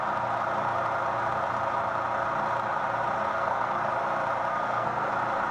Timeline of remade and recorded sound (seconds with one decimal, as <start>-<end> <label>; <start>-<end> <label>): 0.0-3.3 recorded; 3.3-3.9 remade; 3.9-4.5 recorded; 4.5-5.1 remade; 5.1-5.5 recorded

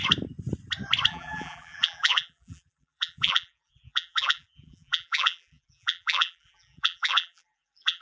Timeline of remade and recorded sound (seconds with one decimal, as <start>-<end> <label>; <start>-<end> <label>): 0.0-1.1 recorded; 1.1-8.0 remade

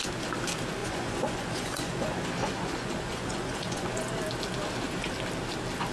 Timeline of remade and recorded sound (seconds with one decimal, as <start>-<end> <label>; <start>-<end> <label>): 0.0-0.8 recorded; 0.8-4.1 remade; 4.1-5.9 recorded

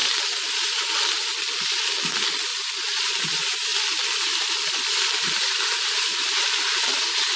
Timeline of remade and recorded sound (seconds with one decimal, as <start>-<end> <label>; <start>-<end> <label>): 0.0-7.4 recorded

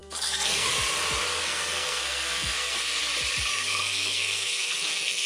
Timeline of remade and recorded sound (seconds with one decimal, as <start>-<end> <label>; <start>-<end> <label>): 0.0-0.7 remade; 0.7-1.3 recorded; 1.3-3.0 remade; 3.0-3.5 recorded; 3.5-5.3 remade

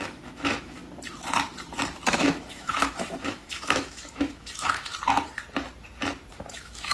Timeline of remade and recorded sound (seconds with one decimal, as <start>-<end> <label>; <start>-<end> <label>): 0.0-0.8 remade; 0.8-2.1 recorded; 2.1-4.9 remade; 4.9-6.3 recorded; 6.3-6.9 remade

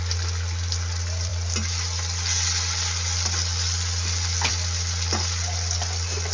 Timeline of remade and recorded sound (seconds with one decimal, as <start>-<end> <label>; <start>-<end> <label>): 0.0-6.3 recorded

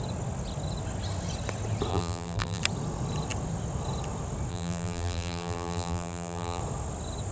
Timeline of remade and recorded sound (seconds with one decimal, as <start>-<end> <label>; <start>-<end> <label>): 0.0-1.9 recorded; 1.9-2.6 remade; 2.6-4.5 recorded; 4.5-6.6 remade; 6.6-7.3 recorded